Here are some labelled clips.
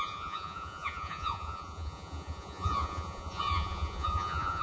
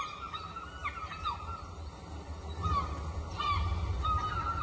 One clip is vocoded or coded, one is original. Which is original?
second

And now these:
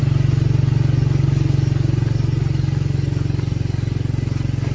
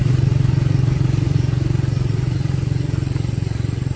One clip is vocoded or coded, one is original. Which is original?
first